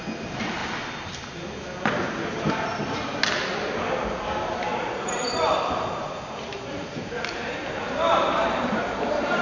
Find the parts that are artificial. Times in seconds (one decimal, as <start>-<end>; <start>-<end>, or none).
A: 4.7-9.4